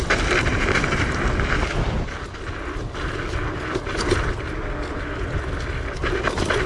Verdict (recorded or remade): recorded